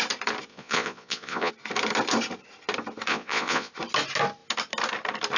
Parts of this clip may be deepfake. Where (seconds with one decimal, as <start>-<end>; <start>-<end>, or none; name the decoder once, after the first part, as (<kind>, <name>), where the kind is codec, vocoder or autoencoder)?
0.5-1.5 (vocoder, Vocos); 3.1-3.7